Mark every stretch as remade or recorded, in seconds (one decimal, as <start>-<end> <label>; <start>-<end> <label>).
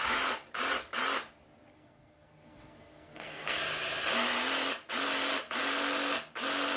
0.0-1.7 recorded; 1.7-3.6 remade; 3.6-6.8 recorded